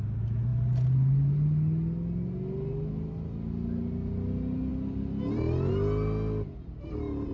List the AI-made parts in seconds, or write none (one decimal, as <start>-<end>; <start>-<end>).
none

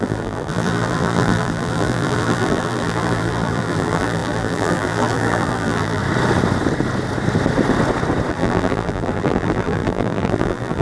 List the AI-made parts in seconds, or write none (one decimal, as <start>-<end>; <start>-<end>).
0.0-6.0; 8.3-10.8

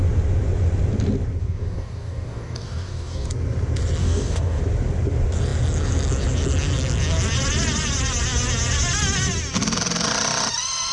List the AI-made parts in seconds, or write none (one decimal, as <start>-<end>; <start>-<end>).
1.4-3.3; 4.0-4.6

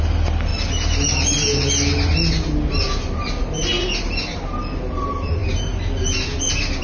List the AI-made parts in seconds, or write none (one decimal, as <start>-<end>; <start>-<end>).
none

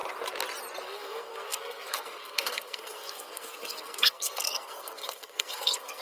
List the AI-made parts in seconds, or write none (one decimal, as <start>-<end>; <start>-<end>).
0.8-6.0

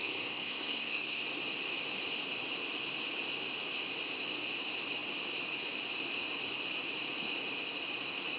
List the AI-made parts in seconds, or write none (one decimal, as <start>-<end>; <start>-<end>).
0.0-1.2

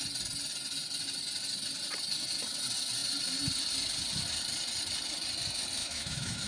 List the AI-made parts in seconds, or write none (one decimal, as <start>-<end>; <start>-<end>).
5.8-6.5